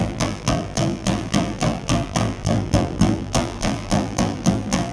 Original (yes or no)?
no